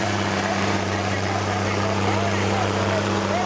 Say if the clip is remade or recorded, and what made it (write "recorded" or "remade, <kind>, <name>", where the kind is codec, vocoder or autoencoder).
remade, vocoder, BigVGAN v2